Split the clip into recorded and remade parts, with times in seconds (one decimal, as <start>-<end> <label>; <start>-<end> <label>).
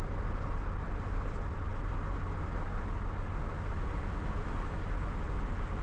0.0-5.8 recorded